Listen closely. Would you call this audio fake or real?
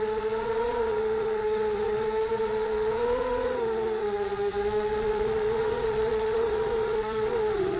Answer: fake